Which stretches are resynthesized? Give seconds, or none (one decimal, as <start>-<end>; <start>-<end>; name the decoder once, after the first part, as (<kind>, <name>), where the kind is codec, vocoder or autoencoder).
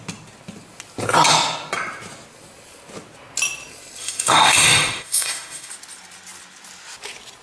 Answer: 4.0-5.7 (autoencoder, DAC-VAE)